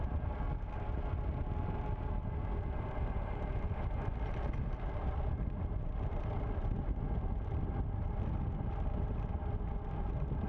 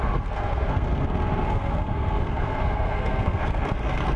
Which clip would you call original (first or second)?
first